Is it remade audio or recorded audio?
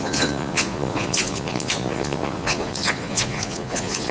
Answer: remade